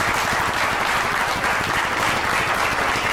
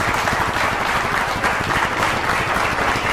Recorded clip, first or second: first